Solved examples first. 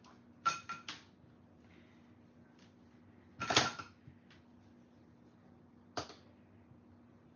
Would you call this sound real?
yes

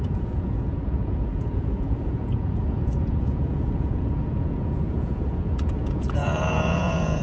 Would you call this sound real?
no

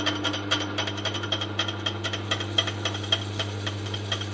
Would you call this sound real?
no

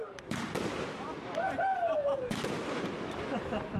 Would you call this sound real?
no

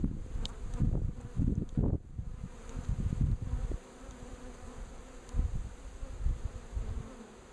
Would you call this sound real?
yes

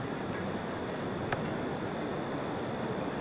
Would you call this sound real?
yes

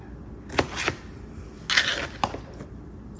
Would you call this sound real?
yes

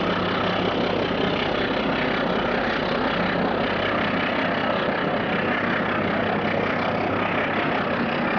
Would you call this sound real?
yes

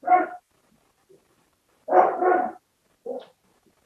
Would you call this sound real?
yes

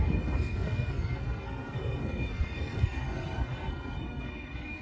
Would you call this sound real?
no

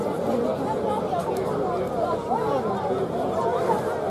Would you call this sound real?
yes